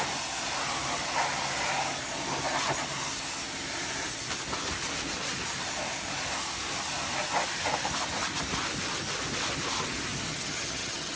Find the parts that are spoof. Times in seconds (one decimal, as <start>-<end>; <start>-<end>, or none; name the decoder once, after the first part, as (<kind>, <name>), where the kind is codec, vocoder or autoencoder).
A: 10.3-11.2 (vocoder, HiFi-GAN)